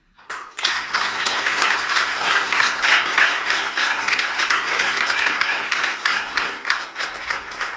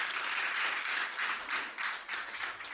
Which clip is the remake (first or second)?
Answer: first